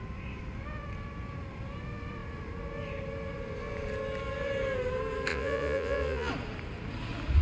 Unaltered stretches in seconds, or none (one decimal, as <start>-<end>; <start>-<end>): 0.0-5.3; 6.3-7.4